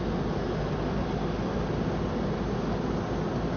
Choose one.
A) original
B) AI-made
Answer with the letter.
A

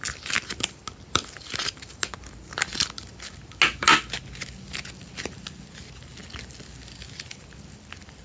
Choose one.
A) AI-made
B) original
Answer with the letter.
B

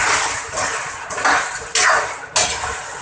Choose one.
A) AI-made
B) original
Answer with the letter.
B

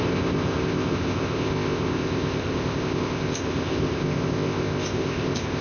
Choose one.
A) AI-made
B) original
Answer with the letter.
A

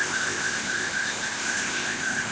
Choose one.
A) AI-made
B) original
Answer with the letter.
A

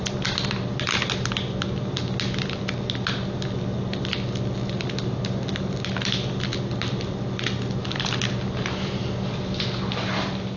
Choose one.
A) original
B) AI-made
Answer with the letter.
A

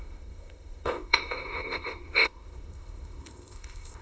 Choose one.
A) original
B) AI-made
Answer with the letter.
B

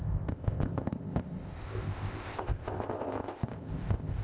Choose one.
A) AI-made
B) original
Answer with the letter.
A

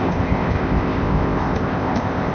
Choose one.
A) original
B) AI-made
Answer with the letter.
B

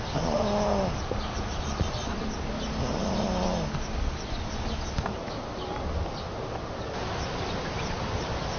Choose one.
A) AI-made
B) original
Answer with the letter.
B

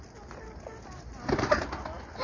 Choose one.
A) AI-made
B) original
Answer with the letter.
B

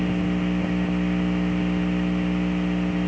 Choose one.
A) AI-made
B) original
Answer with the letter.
B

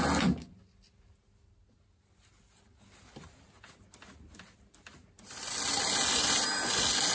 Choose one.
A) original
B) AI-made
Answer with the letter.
A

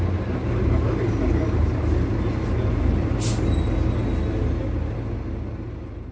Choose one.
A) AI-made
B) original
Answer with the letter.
B